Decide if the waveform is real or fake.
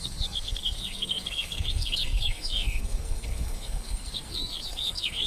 fake